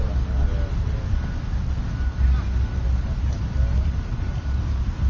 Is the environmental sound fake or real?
real